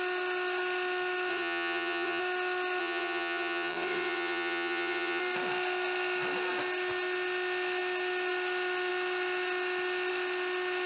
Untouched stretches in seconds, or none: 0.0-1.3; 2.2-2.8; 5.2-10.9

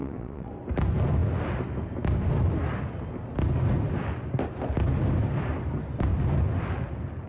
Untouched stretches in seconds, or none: 0.5-7.3

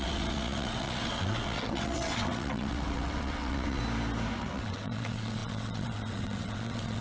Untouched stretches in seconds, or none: 3.8-4.4

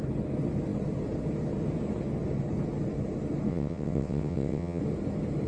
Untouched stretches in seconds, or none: 0.0-3.5; 4.8-5.5